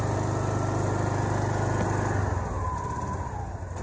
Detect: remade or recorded recorded